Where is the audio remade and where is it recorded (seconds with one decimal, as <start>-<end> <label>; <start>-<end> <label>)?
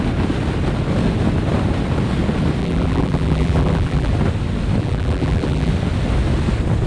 0.0-2.6 recorded; 2.6-4.1 remade; 4.1-4.8 recorded; 4.8-5.7 remade; 5.7-6.9 recorded